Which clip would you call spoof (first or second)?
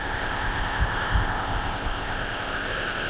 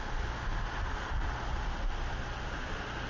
first